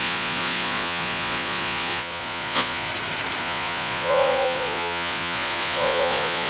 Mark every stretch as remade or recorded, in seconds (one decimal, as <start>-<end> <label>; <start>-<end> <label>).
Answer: 0.0-2.9 remade; 2.9-3.4 recorded; 3.4-6.5 remade